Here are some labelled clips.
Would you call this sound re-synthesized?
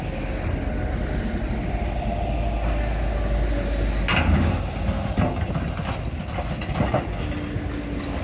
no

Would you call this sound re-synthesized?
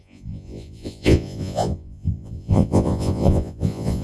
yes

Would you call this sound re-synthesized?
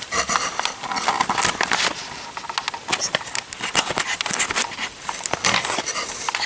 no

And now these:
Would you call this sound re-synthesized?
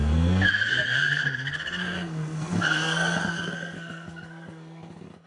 yes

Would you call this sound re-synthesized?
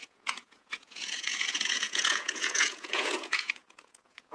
yes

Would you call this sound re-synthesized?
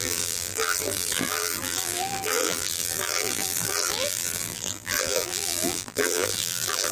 yes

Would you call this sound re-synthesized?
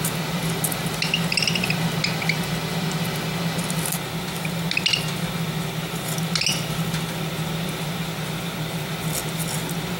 no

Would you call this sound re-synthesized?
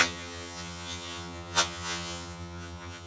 yes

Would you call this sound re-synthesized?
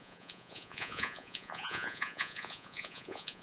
yes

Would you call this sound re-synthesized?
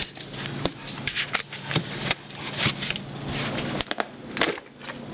no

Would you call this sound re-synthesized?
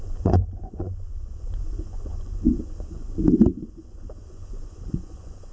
yes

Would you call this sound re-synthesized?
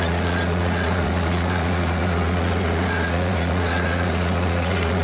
yes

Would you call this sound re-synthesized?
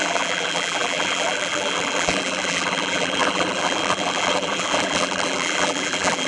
yes